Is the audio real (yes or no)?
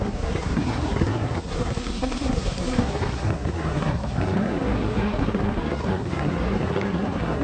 no